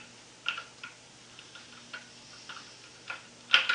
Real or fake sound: real